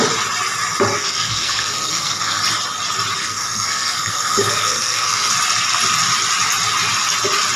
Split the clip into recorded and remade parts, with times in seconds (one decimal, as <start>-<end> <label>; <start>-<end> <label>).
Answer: 0.0-1.0 recorded; 1.0-2.4 remade; 2.4-3.2 recorded; 3.2-5.3 remade; 5.3-7.6 recorded